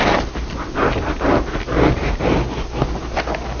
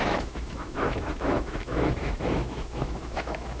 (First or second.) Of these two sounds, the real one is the first